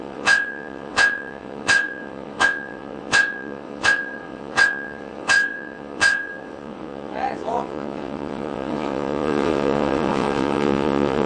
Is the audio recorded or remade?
remade